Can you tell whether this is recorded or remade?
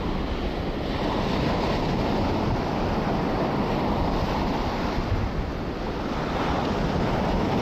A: recorded